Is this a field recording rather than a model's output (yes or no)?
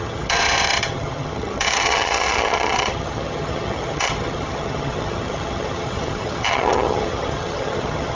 no